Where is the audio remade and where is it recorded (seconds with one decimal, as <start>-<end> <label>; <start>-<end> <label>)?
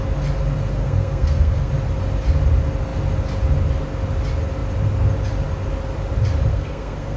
0.0-0.7 recorded; 0.7-1.7 remade; 1.7-6.5 recorded; 6.5-7.2 remade